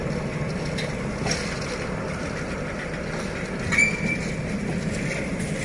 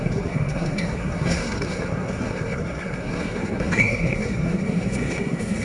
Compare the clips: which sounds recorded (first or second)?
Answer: first